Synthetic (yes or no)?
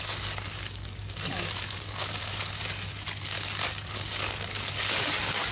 yes